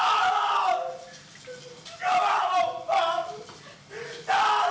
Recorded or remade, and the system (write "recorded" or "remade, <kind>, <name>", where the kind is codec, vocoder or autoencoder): recorded